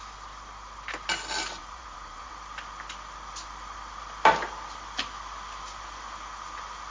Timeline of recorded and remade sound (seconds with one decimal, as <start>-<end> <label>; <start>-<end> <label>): 0.0-1.6 recorded; 1.6-2.3 remade; 2.3-6.9 recorded